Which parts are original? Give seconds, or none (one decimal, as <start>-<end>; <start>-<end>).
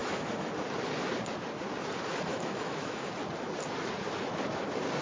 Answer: 0.5-2.3; 3.1-5.0